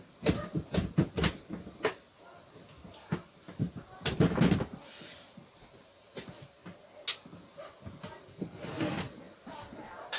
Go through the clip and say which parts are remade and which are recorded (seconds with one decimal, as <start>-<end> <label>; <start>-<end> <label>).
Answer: 0.0-10.2 recorded